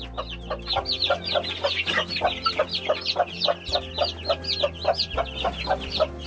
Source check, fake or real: real